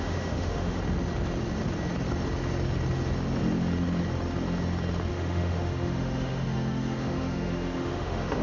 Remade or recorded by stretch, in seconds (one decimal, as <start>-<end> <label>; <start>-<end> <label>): 0.0-0.8 remade; 0.8-5.1 recorded; 5.1-8.4 remade